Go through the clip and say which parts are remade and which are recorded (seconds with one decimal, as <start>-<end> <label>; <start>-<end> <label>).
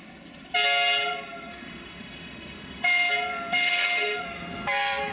0.0-1.5 recorded; 1.5-3.1 remade; 3.1-3.5 recorded; 3.5-4.2 remade; 4.2-5.1 recorded